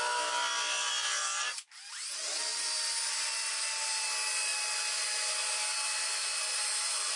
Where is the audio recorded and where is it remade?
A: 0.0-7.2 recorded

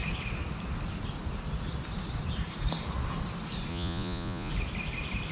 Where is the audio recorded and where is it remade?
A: 0.0-3.7 recorded; 3.7-4.5 remade; 4.5-5.3 recorded

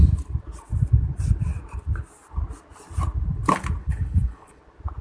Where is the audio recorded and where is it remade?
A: 0.0-3.8 recorded; 3.8-4.6 remade; 4.6-5.0 recorded

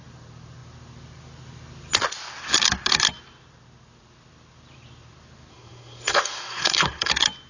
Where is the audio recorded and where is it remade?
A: 0.0-5.5 recorded; 5.5-7.1 remade; 7.1-7.5 recorded

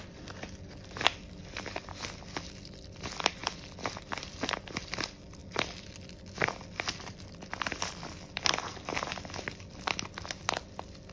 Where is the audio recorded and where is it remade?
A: 0.0-11.1 recorded

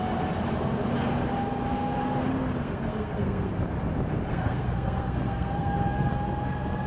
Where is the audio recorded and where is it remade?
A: 0.0-2.6 recorded; 2.6-3.5 remade; 3.5-4.3 recorded; 4.3-6.1 remade; 6.1-6.9 recorded

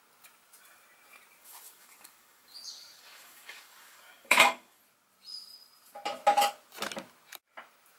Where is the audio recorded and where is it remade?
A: 0.0-1.4 recorded; 1.4-4.8 remade; 4.8-8.0 recorded